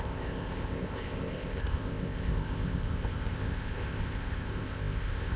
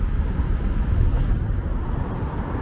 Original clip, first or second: second